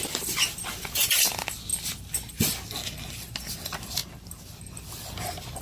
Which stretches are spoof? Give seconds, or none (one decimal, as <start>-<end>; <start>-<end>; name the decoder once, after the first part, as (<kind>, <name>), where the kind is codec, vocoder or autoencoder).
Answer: none